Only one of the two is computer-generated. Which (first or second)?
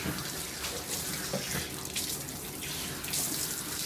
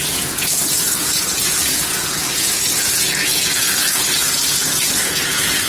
second